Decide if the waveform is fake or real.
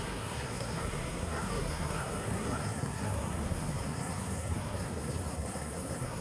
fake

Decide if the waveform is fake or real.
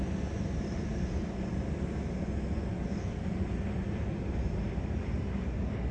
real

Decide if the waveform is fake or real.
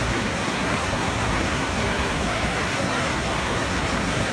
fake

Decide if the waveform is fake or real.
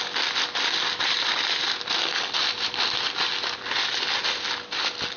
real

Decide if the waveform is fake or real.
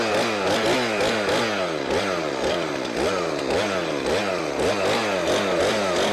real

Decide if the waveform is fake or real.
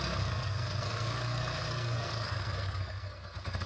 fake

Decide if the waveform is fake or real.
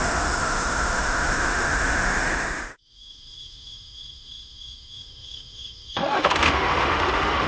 fake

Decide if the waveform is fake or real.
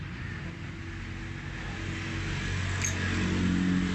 real